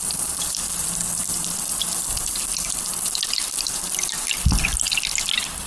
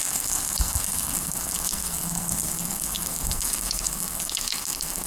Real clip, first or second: first